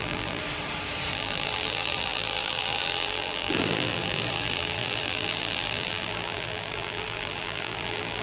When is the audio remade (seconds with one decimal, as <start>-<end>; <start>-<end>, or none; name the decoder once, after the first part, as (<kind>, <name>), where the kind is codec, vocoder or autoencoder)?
0.0-0.4 (vocoder, BigVGAN v2); 1.1-8.2